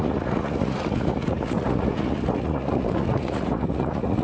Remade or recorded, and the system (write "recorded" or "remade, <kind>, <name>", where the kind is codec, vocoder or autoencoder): remade, vocoder, Vocos